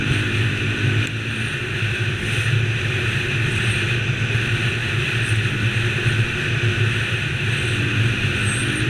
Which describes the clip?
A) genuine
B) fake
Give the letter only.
A